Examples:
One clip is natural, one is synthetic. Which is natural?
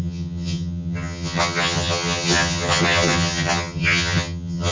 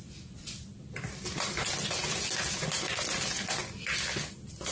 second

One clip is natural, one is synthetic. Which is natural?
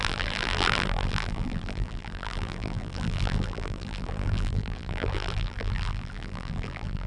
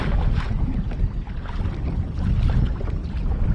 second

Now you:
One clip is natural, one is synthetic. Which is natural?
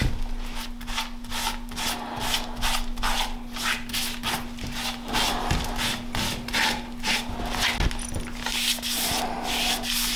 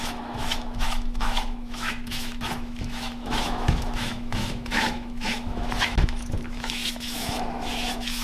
first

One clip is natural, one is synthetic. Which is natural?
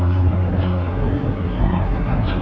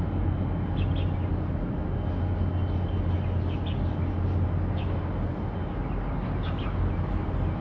second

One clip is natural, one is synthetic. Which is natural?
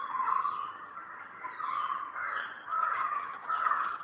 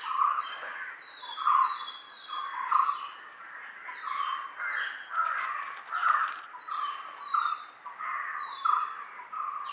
second